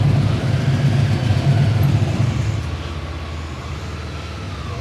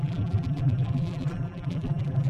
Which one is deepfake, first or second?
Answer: second